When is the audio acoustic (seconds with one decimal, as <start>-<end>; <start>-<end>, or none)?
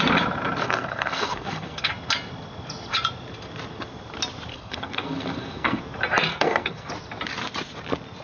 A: 0.0-0.6; 1.9-4.5; 5.8-6.3; 6.9-8.2